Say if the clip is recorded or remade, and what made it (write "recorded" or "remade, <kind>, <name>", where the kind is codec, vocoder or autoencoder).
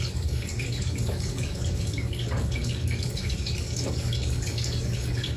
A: remade, codec, DAC